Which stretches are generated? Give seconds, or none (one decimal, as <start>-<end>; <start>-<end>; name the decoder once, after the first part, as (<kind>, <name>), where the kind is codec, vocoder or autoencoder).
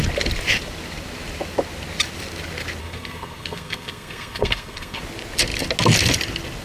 2.8-5.0 (codec, SNAC)